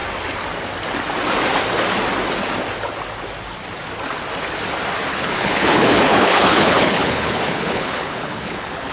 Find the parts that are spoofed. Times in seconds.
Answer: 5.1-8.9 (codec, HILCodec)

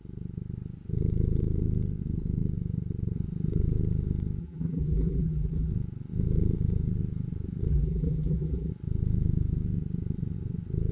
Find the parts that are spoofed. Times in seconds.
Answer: 4.4-5.7 (vocoder, BigVGAN v2); 7.7-8.7

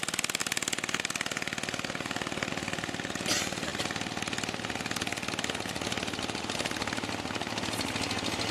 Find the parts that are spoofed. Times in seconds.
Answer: none

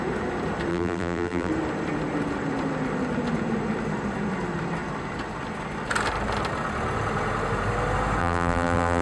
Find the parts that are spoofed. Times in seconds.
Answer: 0.7-1.5 (vocoder, BigVGAN v2); 8.2-9.0

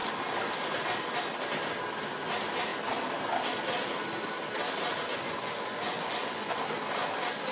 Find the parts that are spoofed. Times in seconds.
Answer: 5.1-6.6 (vocoder, Vocos)

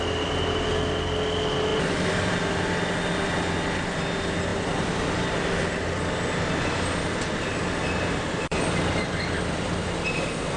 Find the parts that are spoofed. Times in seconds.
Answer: 1.7-2.3 (vocoder, BigVGAN v2)